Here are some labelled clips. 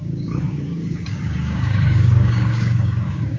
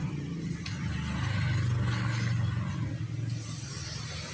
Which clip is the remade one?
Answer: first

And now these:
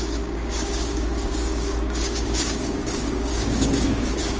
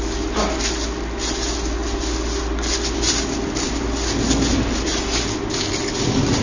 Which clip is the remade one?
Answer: first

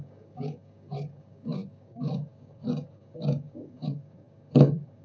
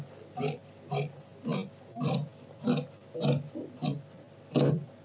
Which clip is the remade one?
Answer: first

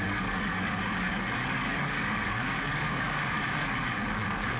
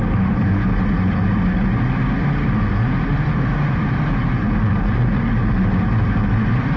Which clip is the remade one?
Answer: first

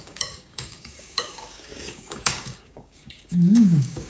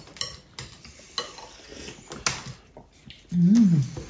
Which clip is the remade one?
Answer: first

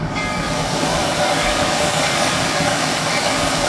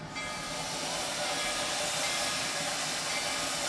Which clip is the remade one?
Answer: first